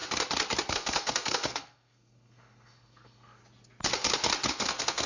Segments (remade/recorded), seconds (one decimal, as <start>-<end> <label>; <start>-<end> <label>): 0.0-0.7 recorded; 0.7-3.4 remade; 3.4-4.5 recorded; 4.5-5.1 remade